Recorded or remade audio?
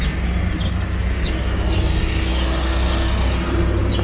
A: recorded